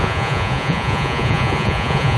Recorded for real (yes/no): no